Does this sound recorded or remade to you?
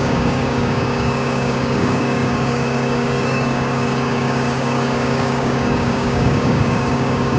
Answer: remade